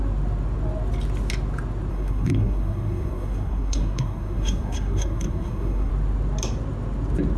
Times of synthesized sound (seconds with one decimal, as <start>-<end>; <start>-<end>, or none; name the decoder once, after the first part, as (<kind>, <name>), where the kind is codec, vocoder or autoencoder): 1.9-5.9 (codec, SNAC)